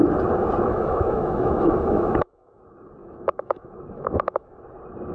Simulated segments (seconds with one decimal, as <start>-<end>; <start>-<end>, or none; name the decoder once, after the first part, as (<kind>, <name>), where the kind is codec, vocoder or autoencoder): 0.7-2.6 (autoencoder, DAC-VAE); 3.0-4.6